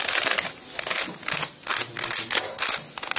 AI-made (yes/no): no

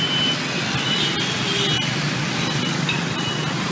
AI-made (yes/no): no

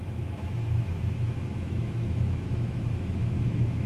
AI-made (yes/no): yes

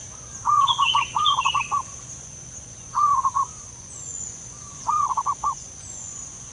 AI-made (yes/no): yes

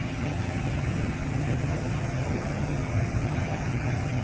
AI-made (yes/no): yes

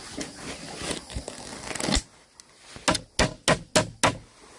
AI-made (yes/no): no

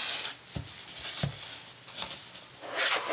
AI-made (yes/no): no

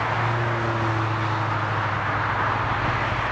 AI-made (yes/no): no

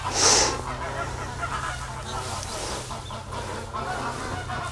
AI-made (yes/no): no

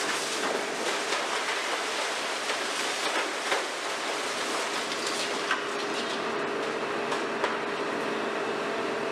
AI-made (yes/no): no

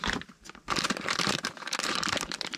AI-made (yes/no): yes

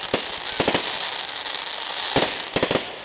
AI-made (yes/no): no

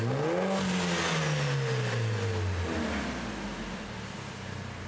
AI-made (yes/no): no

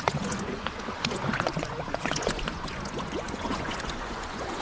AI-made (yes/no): yes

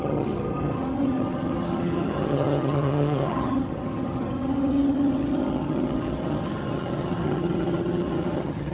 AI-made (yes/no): yes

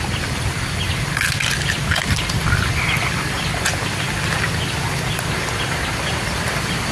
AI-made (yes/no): no